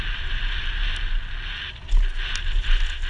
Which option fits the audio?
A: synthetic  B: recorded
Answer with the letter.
B